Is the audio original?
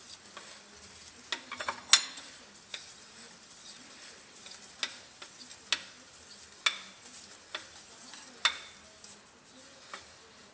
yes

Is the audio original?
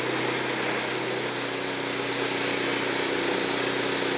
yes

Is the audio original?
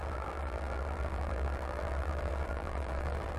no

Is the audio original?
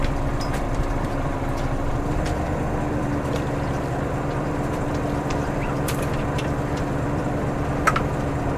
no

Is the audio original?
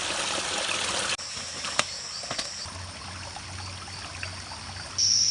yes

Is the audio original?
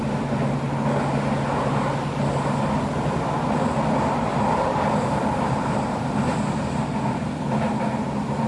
yes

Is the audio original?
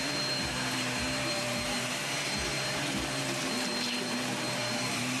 no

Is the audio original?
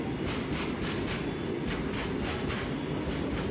yes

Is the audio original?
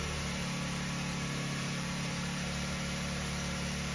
no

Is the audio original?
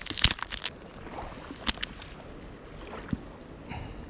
yes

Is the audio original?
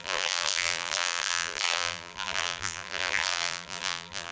no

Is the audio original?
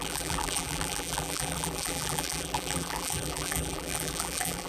no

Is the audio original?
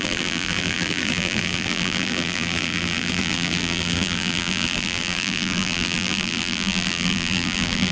no